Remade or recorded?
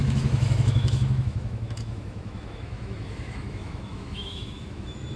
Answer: remade